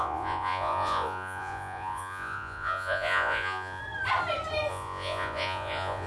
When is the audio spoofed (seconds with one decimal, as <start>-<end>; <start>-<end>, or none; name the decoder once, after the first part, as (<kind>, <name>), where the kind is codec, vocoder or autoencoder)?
0.0-3.8 (vocoder, Vocos); 4.7-6.1